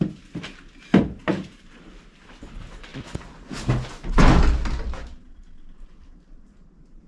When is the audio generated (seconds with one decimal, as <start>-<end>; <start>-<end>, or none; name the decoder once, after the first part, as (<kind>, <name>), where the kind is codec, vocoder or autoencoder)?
1.3-2.0 (vocoder, BigVGAN v2)